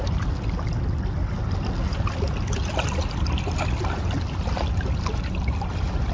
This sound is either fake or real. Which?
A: real